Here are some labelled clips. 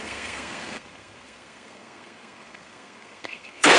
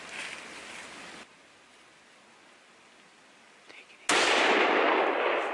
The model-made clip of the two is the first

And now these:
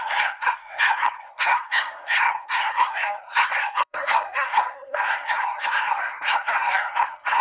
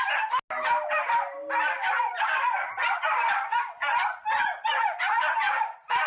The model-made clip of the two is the first